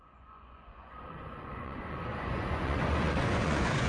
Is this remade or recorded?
remade